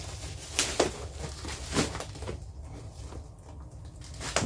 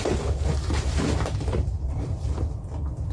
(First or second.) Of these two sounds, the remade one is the second